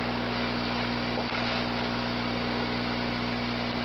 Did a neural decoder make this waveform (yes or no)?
no